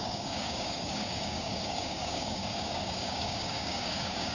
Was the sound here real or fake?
fake